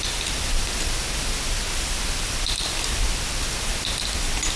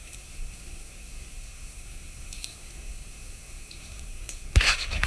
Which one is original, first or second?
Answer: first